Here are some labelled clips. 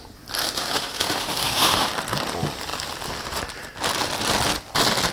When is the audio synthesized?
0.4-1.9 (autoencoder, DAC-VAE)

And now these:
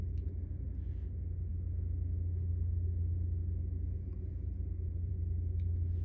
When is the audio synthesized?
none

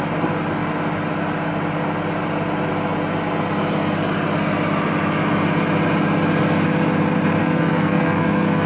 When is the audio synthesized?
7.4-8.7 (codec, SNAC)

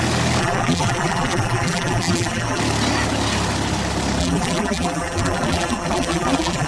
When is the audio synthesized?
0.4-2.6 (vocoder, BigVGAN v2); 4.2-6.7

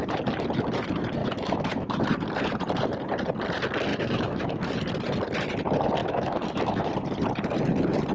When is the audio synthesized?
1.2-2.0 (autoencoder, DAC-VAE); 3.9-4.7; 6.0-6.9

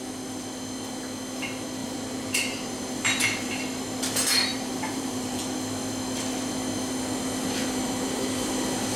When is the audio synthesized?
1.8-3.6 (vocoder, BigVGAN v2); 4.5-5.4; 7.6-8.5